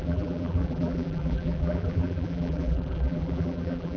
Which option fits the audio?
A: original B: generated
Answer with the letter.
B